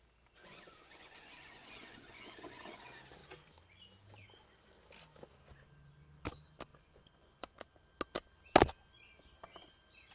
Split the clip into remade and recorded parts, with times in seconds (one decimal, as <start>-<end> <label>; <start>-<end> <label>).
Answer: 0.0-0.4 recorded; 0.4-2.8 remade; 2.8-6.7 recorded; 6.7-7.9 remade; 7.9-10.1 recorded